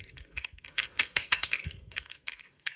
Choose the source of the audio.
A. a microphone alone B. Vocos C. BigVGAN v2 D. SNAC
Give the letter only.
D